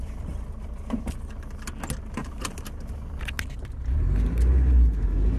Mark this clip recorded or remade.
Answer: recorded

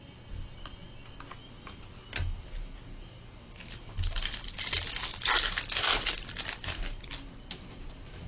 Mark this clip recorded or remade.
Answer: recorded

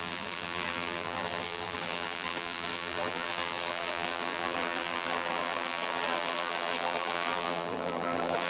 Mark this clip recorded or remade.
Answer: remade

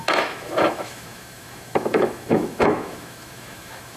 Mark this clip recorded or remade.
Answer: remade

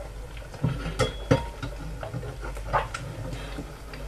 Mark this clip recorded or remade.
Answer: recorded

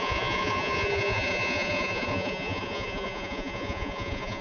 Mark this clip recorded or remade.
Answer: remade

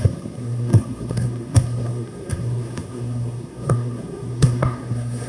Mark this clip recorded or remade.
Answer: remade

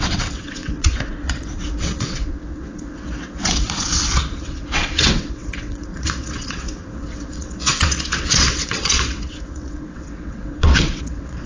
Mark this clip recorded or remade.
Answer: remade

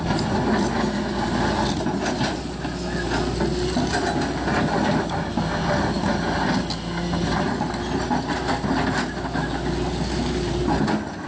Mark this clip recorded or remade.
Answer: recorded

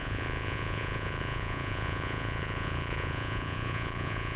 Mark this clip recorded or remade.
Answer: remade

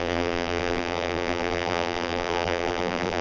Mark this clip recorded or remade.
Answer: remade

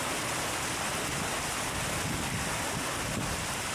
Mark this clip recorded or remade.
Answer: recorded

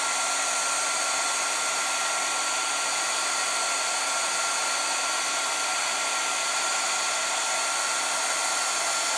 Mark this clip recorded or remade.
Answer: recorded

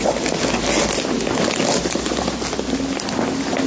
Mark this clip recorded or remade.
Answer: recorded